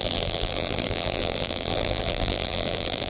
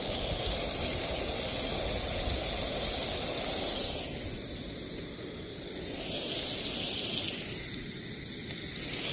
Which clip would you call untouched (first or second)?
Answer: second